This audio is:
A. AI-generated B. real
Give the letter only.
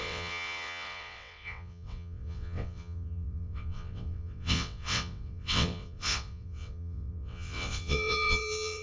A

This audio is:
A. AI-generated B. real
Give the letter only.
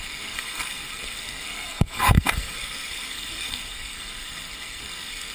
A